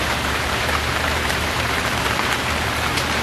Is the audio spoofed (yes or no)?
yes